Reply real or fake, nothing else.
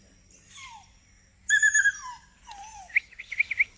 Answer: real